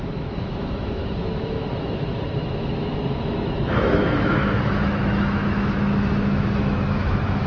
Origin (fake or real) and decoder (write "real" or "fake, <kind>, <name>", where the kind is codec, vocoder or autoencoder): fake, autoencoder, DAC-VAE